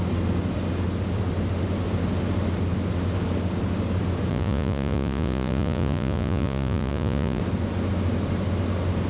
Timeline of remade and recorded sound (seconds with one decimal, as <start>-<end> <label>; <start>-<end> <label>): 0.0-4.3 recorded; 4.3-7.4 remade; 7.4-9.1 recorded